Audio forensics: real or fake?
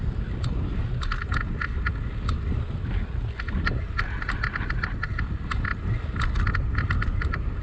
real